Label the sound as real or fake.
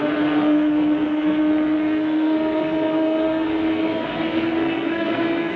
fake